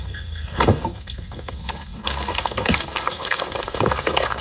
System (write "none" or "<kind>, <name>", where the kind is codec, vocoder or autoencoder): codec, SNAC